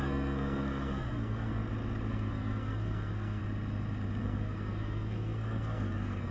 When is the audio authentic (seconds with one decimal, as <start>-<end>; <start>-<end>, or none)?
1.6-2.1; 3.4-4.2